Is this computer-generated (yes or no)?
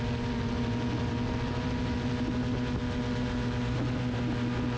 no